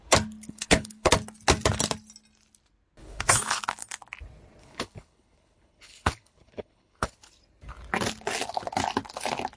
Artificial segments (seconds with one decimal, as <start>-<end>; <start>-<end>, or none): 0.5-1.1; 3.0-3.6; 4.6-7.3